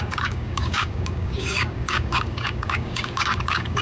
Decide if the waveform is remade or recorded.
remade